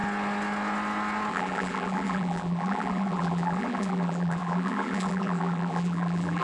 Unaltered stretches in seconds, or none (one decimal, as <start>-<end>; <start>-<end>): 0.0-1.3

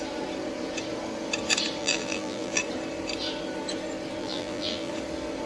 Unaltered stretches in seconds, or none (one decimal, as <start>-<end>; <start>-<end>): 0.0-1.8; 2.6-4.2; 4.9-5.5

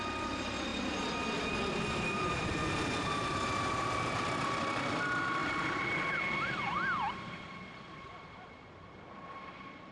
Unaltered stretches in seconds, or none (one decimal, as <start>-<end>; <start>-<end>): 0.0-0.7; 3.2-5.4